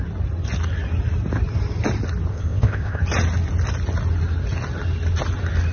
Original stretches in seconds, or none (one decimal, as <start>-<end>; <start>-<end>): 0.0-2.3; 3.0-5.7